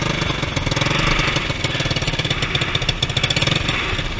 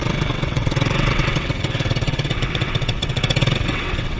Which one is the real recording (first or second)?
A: first